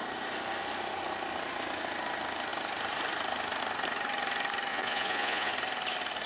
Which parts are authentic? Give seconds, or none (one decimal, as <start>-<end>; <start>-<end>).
0.0-4.7; 5.5-6.3